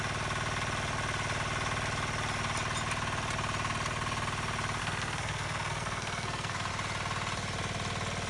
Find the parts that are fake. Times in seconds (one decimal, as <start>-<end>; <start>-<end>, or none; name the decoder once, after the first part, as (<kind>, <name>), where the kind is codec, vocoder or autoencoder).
4.8-6.7 (codec, SNAC)